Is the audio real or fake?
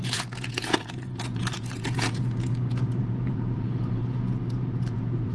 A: fake